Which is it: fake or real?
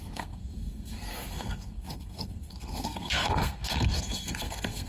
fake